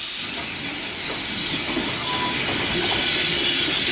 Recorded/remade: recorded